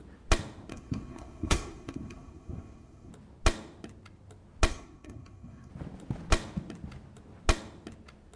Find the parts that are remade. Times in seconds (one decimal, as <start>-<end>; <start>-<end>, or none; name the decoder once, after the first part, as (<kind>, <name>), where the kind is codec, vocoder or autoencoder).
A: 0.7-3.1 (codec, SNAC); 4.7-5.7